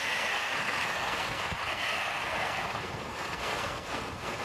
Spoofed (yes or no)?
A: yes